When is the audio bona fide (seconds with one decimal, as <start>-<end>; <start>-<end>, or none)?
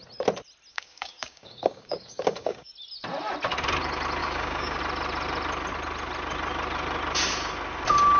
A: 0.0-0.7; 2.7-4.2; 4.8-8.2